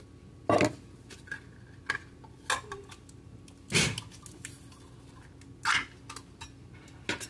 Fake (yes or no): no